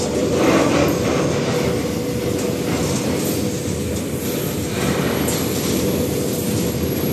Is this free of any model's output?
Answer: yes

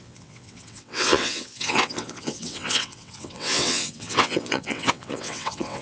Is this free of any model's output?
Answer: no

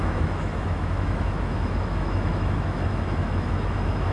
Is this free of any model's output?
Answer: no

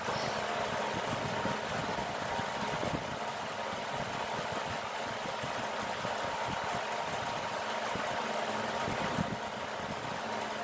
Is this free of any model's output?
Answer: yes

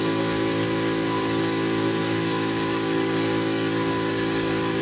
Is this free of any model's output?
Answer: no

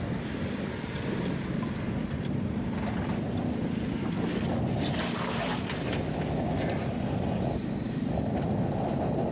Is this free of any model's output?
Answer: yes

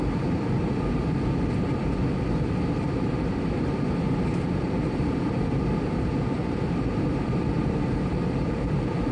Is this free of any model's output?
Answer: no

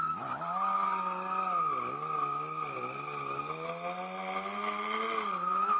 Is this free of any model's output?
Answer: yes